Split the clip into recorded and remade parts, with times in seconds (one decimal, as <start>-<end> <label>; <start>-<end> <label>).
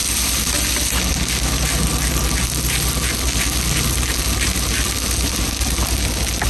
0.0-6.5 recorded